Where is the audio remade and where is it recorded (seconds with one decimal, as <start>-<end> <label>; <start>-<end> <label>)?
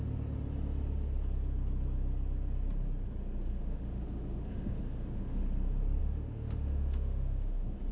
0.0-3.6 recorded; 3.6-5.4 remade; 5.4-6.0 recorded; 6.0-7.9 remade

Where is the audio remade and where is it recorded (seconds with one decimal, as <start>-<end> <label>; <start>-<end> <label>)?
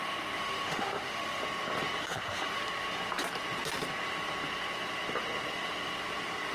0.0-1.4 remade; 1.4-2.0 recorded; 2.0-2.6 remade; 2.6-6.5 recorded